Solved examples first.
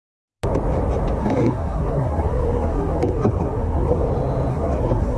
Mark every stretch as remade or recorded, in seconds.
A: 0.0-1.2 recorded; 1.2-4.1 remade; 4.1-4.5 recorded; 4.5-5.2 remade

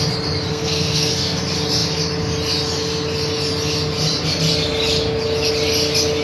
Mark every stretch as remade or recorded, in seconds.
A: 0.0-0.5 recorded; 0.5-1.4 remade; 1.4-6.2 recorded